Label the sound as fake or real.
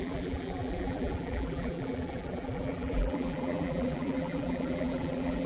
fake